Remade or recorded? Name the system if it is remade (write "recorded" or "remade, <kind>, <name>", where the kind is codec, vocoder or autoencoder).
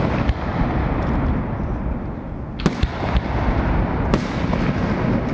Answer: recorded